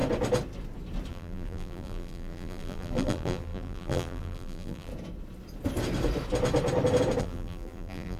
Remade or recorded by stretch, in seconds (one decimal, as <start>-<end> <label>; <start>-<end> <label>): 0.0-1.1 recorded; 1.1-4.9 remade; 4.9-7.2 recorded; 7.2-8.2 remade